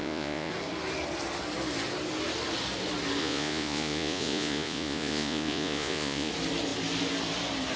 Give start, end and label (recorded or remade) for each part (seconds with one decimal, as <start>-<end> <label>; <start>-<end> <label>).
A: 0.0-0.5 remade; 0.5-3.2 recorded; 3.2-6.3 remade; 6.3-7.8 recorded

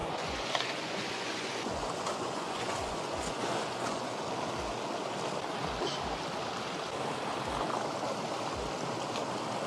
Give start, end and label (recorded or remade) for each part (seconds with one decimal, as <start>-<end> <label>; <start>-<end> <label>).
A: 0.0-4.1 remade; 4.1-9.7 recorded

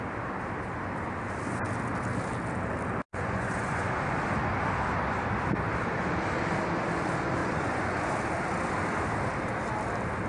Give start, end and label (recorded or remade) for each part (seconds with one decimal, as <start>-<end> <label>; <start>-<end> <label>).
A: 0.0-3.1 recorded; 3.1-3.9 remade; 3.9-7.4 recorded; 7.4-8.1 remade; 8.1-10.3 recorded

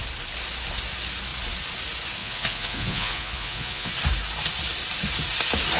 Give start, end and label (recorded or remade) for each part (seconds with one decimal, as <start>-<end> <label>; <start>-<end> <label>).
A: 0.0-2.2 recorded; 2.2-3.9 remade; 3.9-5.8 recorded

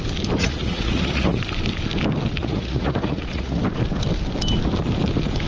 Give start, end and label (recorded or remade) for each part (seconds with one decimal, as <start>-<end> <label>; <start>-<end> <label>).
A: 0.0-0.4 recorded; 0.4-1.4 remade; 1.4-2.4 recorded; 2.4-3.6 remade; 3.6-5.5 recorded

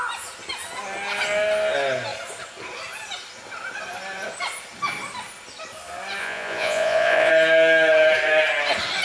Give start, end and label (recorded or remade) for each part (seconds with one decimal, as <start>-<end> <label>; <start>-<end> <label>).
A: 0.0-6.2 recorded; 6.2-7.3 remade; 7.3-9.0 recorded

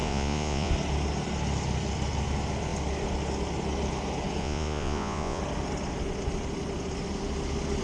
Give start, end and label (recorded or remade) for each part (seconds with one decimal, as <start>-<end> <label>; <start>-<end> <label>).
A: 0.0-0.7 remade; 0.7-4.4 recorded; 4.4-5.4 remade; 5.4-7.8 recorded